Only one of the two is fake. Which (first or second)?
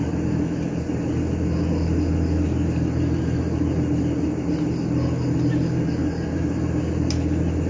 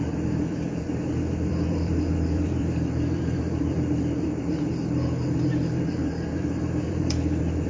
second